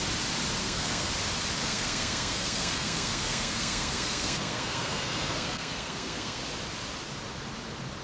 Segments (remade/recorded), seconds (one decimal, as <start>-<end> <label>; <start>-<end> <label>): 0.0-0.6 recorded; 0.6-1.1 remade; 1.1-1.6 recorded; 1.6-6.4 remade; 6.4-8.0 recorded